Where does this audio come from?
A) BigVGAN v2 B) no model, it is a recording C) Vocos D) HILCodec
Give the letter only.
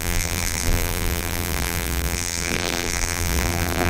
A